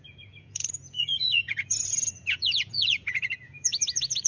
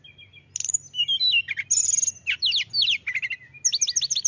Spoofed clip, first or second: first